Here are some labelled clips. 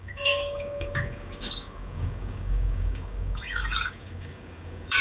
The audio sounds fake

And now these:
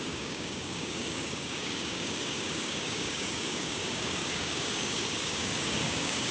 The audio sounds fake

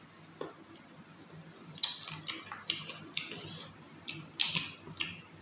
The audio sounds real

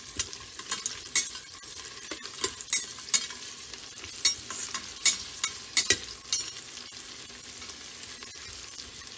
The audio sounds real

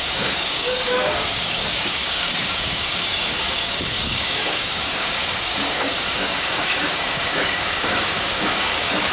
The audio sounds fake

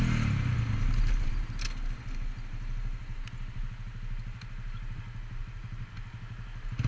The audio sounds real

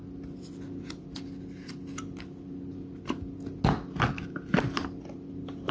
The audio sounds real